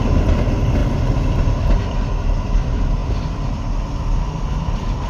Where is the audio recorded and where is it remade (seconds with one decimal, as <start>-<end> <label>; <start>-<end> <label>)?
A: 0.0-5.1 recorded